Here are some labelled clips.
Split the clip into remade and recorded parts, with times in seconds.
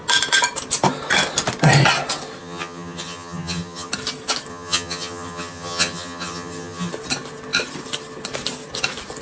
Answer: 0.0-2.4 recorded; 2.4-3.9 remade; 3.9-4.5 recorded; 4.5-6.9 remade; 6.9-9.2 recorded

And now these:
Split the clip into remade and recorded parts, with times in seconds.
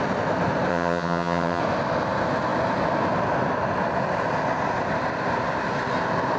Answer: 0.0-0.7 recorded; 0.7-1.6 remade; 1.6-6.4 recorded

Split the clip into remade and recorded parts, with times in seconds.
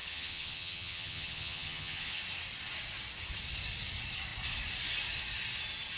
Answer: 0.0-2.2 remade; 2.2-6.0 recorded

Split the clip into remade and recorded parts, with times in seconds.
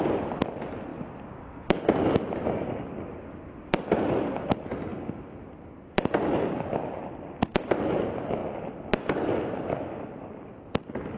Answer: 0.0-11.2 recorded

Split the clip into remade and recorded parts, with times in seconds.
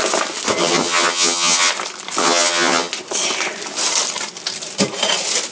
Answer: 0.0-0.6 recorded; 0.6-1.7 remade; 1.7-2.2 recorded; 2.2-2.9 remade; 2.9-5.5 recorded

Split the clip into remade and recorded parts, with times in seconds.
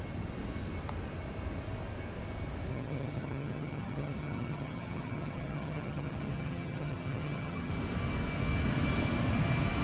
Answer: 0.0-2.7 recorded; 2.7-7.7 remade; 7.7-9.8 recorded